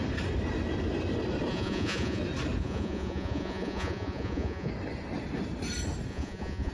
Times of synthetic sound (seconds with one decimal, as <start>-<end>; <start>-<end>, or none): 1.5-2.2; 2.6-4.7; 6.1-6.7